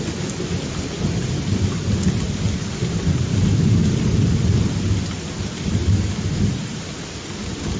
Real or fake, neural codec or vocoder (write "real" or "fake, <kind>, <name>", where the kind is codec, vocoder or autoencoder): real